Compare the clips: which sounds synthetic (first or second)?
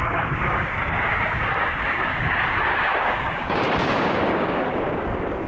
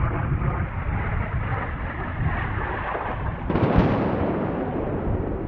first